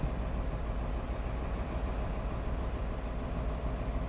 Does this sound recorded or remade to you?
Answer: remade